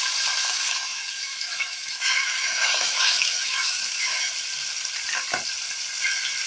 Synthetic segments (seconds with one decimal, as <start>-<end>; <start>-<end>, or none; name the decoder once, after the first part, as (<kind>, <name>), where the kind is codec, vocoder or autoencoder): 0.4-4.3 (autoencoder, DAC-VAE)